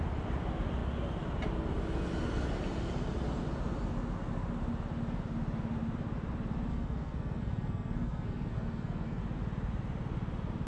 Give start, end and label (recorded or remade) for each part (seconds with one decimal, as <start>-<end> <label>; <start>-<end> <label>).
0.0-6.7 recorded; 6.7-9.2 remade; 9.2-10.7 recorded